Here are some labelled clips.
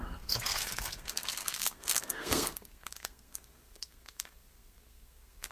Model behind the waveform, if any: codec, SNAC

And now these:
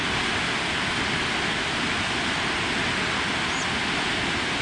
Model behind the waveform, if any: none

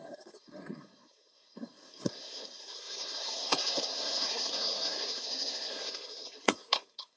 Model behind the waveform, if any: codec, SNAC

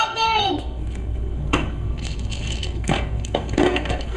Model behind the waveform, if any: codec, SNAC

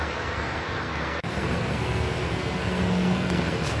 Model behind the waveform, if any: codec, SNAC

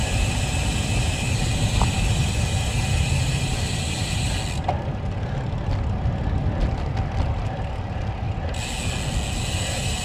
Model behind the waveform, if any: none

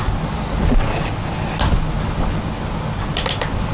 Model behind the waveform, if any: none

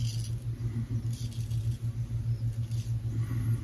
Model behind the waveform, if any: none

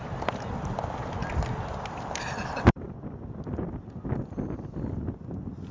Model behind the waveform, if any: none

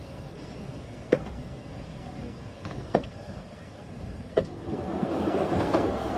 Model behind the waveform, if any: codec, SNAC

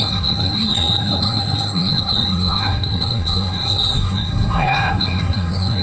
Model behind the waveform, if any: codec, SNAC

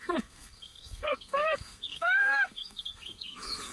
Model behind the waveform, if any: codec, SNAC